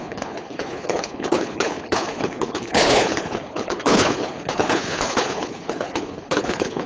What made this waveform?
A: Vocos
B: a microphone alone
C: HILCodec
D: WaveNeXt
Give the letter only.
C